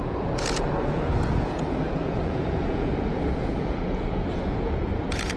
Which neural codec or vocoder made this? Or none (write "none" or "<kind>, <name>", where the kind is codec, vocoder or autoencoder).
vocoder, Vocos